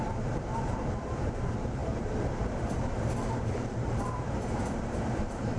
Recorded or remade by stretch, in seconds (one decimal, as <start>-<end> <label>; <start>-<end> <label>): 0.0-5.6 remade